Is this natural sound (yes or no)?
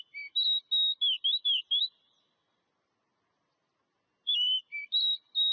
yes